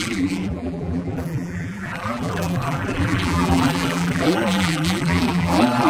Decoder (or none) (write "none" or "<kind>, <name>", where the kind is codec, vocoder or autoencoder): vocoder, BigVGAN v2